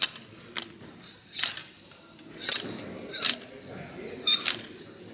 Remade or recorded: recorded